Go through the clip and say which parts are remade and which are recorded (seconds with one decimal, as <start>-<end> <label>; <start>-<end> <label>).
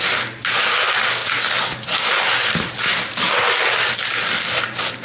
0.0-5.0 recorded